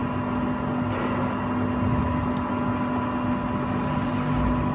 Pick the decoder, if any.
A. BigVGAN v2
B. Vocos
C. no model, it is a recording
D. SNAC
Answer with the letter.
C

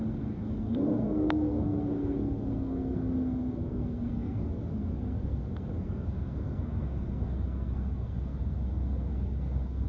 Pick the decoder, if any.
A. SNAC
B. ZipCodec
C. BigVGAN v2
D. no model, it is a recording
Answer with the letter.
A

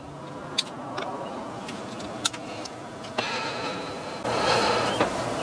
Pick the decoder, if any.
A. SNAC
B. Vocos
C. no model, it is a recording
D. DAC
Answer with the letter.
C